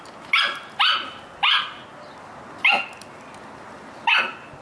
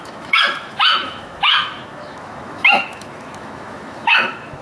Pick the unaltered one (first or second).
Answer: first